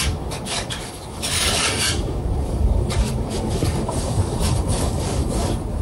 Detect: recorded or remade remade